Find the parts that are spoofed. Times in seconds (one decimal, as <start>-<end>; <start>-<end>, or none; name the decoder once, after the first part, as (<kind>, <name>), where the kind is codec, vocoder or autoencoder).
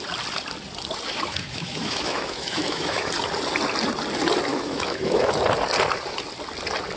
1.3-3.1 (autoencoder, DAC-VAE); 4.5-5.3